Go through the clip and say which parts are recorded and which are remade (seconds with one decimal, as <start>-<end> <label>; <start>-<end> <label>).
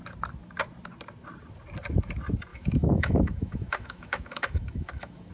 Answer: 0.0-2.5 recorded; 2.5-5.3 remade